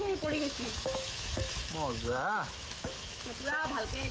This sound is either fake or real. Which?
fake